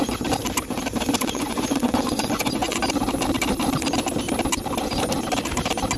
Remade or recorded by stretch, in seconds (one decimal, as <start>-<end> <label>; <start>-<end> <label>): 0.0-1.2 recorded; 1.2-2.8 remade; 2.8-6.0 recorded